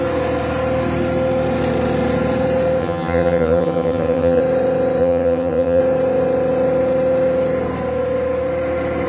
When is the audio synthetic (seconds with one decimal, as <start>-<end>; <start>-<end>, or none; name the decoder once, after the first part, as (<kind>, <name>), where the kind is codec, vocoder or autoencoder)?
2.8-4.4 (vocoder, HiFi-GAN); 5.0-5.8